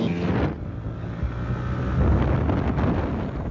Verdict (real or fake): real